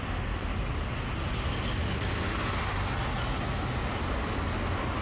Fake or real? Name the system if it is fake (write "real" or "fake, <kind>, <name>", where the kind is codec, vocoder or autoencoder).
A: real